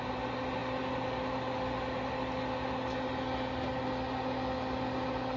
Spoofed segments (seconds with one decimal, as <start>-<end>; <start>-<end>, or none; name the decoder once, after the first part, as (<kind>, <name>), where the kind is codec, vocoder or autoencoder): none